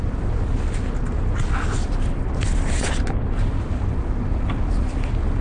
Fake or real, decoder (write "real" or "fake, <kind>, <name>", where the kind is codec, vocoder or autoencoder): real